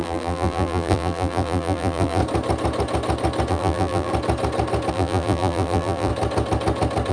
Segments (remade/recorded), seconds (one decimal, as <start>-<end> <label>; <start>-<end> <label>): 0.0-2.2 remade; 2.2-3.5 recorded; 3.5-4.1 remade; 4.1-4.9 recorded; 4.9-6.1 remade; 6.1-7.1 recorded